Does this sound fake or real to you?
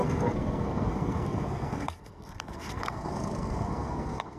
fake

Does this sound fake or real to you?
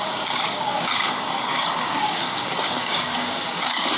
fake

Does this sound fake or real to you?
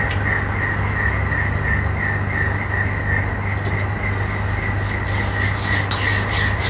real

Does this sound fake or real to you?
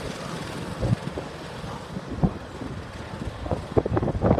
real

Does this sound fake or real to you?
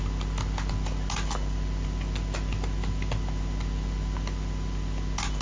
real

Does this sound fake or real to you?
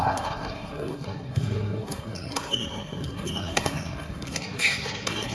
fake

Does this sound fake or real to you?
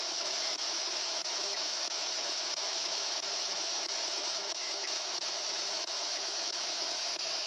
fake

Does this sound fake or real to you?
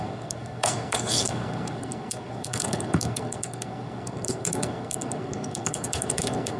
fake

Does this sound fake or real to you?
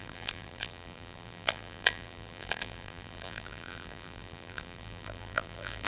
fake